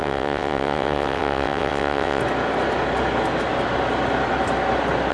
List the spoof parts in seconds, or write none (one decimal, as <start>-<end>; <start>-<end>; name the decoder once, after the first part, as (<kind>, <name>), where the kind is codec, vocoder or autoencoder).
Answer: 0.0-2.2 (vocoder, WaveNeXt)